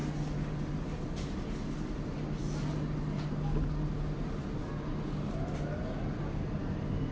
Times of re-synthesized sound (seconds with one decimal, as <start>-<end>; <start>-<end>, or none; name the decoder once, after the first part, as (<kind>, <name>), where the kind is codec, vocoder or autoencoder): none